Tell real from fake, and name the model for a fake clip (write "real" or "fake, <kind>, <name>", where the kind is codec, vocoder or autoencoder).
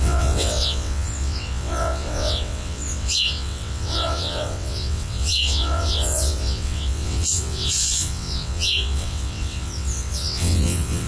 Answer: fake, vocoder, WaveNeXt